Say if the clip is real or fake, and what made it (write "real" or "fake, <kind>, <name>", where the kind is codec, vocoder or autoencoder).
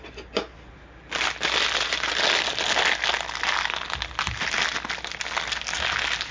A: real